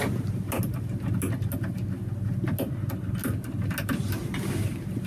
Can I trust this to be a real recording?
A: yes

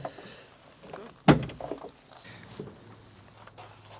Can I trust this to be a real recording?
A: yes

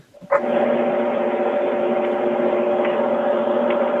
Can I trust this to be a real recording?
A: yes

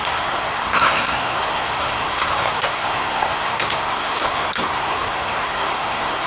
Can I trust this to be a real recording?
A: no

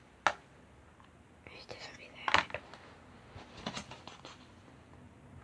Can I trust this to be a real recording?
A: yes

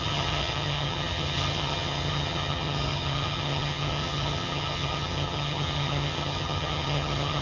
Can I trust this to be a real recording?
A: no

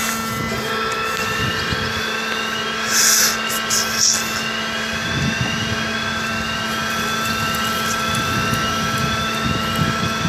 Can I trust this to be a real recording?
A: yes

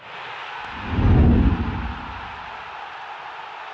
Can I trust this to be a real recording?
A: yes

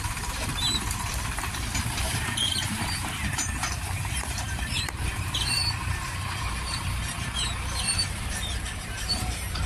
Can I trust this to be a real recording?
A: no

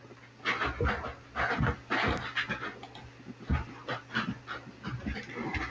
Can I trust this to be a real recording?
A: yes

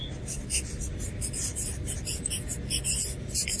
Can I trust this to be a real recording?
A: yes